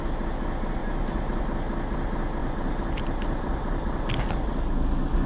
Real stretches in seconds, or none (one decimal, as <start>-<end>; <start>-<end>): 0.0-0.8; 1.4-2.4; 4.1-5.3